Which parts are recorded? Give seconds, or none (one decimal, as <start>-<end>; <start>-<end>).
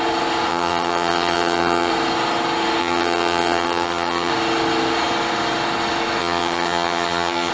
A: 0.0-0.5; 1.9-2.8; 4.3-6.2